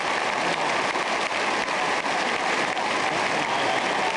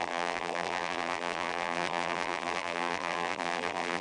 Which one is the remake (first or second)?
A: second